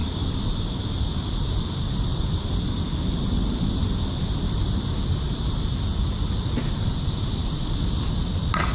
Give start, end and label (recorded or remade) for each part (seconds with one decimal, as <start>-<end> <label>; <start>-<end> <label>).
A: 0.0-8.7 recorded